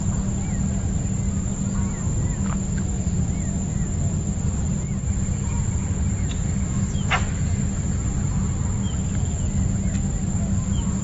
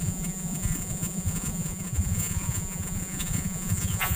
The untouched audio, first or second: first